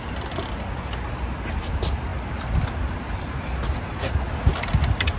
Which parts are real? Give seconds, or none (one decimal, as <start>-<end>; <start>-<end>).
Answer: 0.0-5.2